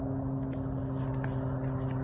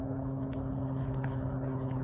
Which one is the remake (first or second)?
second